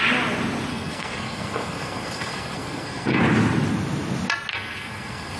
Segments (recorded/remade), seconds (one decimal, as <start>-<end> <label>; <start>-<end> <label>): 0.0-0.7 recorded; 0.7-3.2 remade; 3.2-4.5 recorded; 4.5-5.4 remade